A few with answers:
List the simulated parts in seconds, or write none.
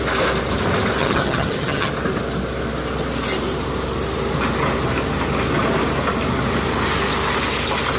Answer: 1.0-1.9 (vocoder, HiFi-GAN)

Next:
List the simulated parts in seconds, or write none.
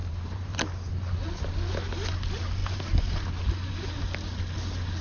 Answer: 0.0-0.7 (vocoder, BigVGAN v2); 2.6-3.7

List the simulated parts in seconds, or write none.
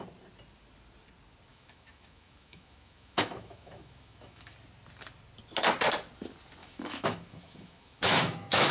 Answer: 1.5-4.5 (autoencoder, DAC-VAE); 6.6-8.7